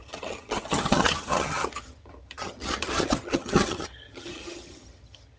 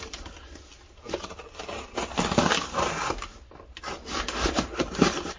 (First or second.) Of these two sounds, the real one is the second